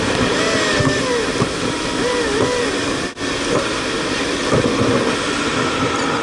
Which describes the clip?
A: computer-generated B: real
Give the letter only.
B